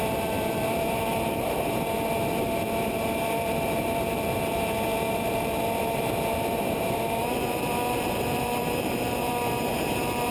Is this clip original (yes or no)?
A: no